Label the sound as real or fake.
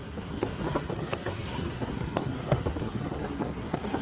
fake